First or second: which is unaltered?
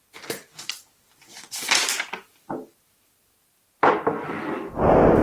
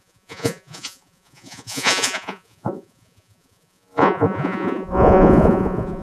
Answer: first